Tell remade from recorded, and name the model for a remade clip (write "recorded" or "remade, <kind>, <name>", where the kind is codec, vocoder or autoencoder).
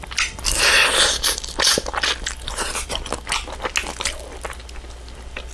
recorded